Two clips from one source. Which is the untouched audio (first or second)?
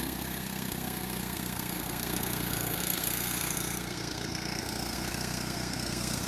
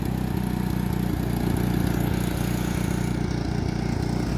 second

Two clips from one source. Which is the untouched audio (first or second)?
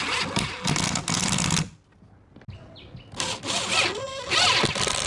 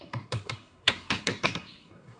first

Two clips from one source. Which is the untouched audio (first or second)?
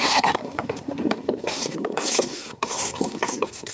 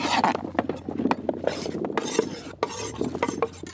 second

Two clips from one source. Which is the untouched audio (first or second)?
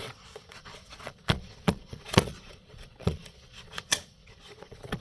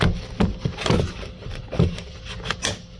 second